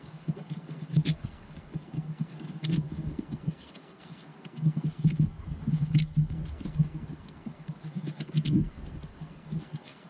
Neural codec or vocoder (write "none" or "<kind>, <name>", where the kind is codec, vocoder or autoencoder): codec, SNAC